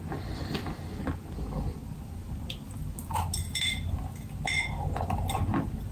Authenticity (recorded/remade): recorded